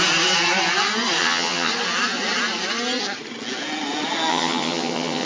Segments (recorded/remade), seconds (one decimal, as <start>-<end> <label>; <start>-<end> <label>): 0.0-1.2 recorded; 1.2-1.7 remade; 1.7-4.3 recorded; 4.3-5.3 remade